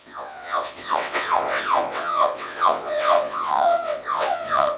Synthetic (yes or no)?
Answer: yes